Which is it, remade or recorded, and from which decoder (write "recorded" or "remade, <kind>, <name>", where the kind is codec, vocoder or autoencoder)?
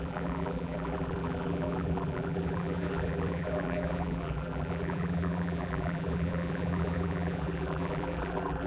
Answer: remade, vocoder, BigVGAN v2